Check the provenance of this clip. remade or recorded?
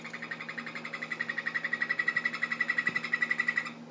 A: recorded